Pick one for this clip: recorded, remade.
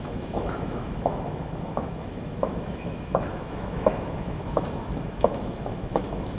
remade